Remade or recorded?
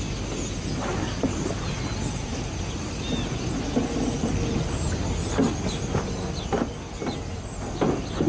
recorded